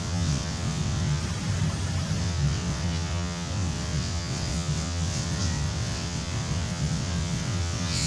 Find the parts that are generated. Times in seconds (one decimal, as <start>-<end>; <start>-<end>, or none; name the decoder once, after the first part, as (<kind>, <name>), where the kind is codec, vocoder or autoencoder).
0.0-1.2 (vocoder, WaveNeXt); 2.2-8.1